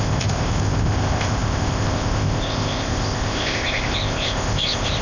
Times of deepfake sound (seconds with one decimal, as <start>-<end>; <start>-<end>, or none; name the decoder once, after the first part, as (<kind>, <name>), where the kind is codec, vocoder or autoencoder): 0.0-5.0 (codec, ZipCodec)